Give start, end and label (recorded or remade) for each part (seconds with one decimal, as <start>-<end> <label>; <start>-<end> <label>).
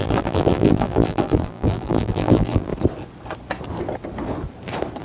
0.0-2.7 remade; 2.7-5.0 recorded